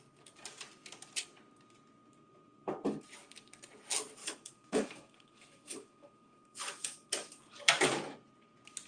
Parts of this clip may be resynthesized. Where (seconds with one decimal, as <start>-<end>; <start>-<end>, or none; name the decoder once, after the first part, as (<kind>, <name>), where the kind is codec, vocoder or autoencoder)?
4.2-7.1 (autoencoder, DAC-VAE)